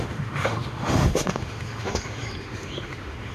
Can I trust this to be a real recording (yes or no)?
no